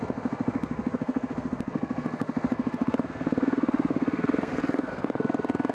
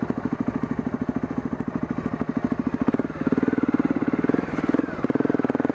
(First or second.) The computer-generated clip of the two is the first